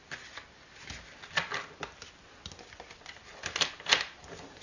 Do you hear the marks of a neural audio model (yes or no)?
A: no